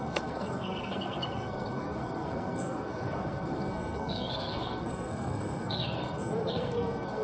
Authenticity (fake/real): fake